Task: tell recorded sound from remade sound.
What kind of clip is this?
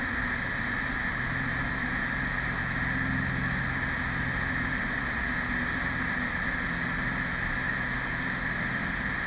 recorded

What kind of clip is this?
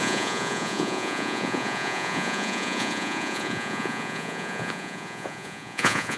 remade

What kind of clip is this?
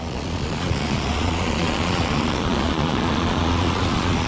remade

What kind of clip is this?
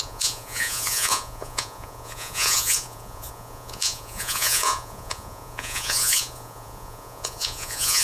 remade